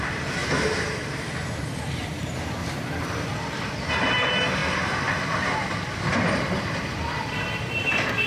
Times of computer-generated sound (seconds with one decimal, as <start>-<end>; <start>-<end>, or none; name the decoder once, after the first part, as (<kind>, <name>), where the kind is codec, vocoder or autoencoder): 0.0-0.4 (vocoder, BigVGAN v2); 1.6-2.6; 3.9-4.6; 7.3-8.3

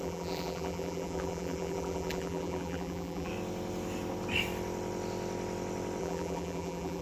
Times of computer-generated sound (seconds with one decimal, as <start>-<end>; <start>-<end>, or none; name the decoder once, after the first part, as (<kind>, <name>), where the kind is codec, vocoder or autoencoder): 0.0-3.3 (vocoder, BigVGAN v2); 6.0-7.0

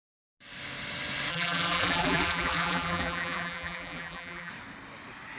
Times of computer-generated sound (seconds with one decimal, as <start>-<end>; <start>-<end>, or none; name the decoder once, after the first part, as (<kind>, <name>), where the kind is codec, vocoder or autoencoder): 1.3-4.5 (vocoder, BigVGAN v2)

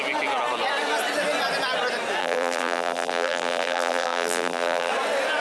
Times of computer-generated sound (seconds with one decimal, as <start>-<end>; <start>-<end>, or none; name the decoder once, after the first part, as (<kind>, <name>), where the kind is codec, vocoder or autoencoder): 2.2-4.9 (vocoder, BigVGAN v2)

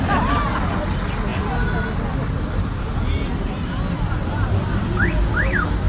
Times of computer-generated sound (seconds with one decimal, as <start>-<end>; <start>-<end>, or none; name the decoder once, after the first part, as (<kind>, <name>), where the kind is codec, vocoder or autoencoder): 1.3-4.8 (vocoder, BigVGAN v2)